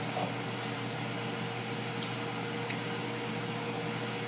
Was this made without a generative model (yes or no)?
yes